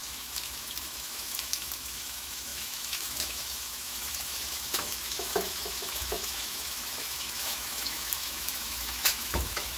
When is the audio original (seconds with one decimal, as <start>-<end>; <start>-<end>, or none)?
none